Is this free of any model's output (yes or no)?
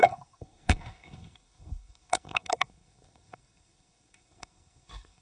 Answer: no